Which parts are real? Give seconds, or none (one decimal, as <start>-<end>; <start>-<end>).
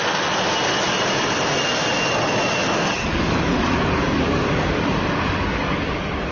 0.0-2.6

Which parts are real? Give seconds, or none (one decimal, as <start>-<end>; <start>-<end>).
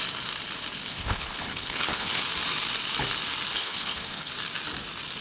0.0-0.9; 2.2-3.5; 4.3-5.2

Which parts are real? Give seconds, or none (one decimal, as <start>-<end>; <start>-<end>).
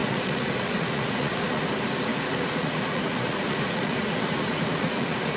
1.6-2.1